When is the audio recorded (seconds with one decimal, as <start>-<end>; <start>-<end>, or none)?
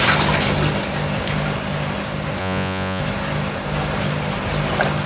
0.0-2.4; 3.0-5.1